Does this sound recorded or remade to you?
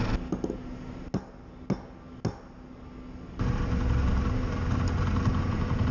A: recorded